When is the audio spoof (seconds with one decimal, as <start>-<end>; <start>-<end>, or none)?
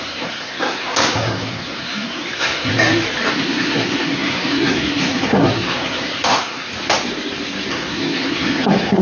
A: 0.0-2.7; 3.3-6.7; 7.7-9.0